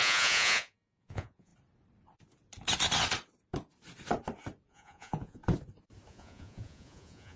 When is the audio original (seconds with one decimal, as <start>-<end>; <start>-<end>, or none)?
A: 1.5-4.7; 5.4-6.1